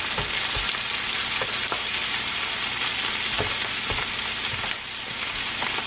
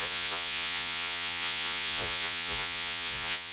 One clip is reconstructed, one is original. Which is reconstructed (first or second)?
second